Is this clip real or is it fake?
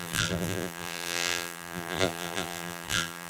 fake